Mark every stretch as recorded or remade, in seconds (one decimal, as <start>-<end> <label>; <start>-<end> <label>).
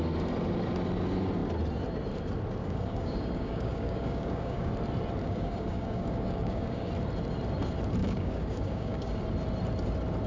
0.0-2.6 recorded; 2.6-4.7 remade; 4.7-5.2 recorded; 5.2-6.9 remade; 6.9-8.0 recorded; 8.0-9.2 remade; 9.2-10.3 recorded